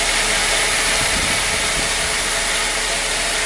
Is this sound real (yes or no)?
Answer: yes